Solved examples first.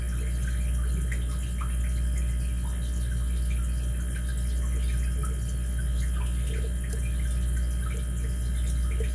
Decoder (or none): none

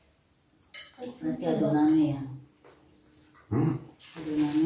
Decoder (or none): none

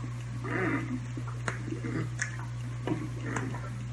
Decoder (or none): none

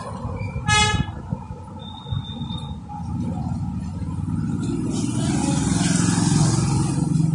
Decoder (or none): none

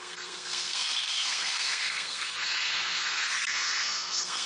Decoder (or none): codec, SNAC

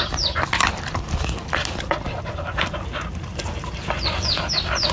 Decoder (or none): none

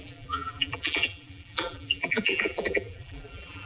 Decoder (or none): vocoder, BigVGAN v2